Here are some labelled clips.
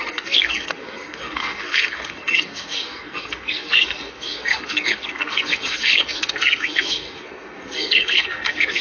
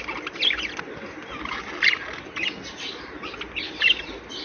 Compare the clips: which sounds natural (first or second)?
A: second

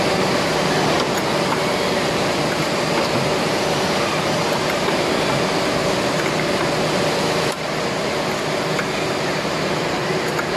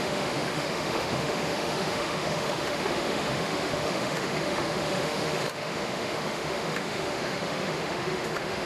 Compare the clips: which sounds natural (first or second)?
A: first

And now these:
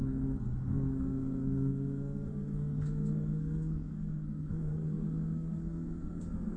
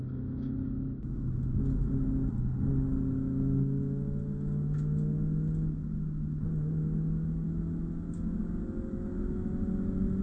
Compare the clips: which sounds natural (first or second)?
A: second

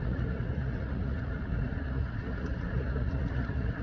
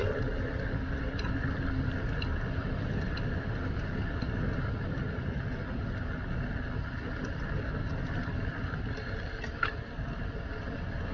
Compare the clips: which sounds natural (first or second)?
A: second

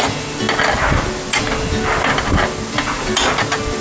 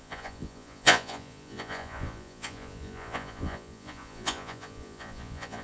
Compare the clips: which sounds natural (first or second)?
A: first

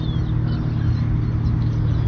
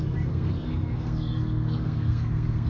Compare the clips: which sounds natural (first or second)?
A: first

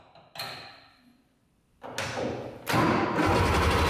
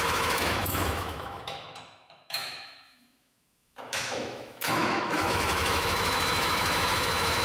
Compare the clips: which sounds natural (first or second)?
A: first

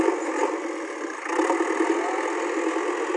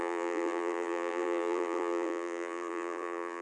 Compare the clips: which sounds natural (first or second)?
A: first